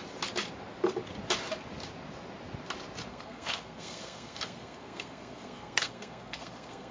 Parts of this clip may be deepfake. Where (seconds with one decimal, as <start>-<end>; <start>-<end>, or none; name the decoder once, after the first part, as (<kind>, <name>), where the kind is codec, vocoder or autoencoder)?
3.1-6.9 (codec, SNAC)